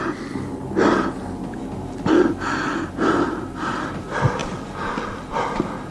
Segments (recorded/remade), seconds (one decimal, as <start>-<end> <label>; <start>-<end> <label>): 0.0-4.4 recorded; 4.4-5.9 remade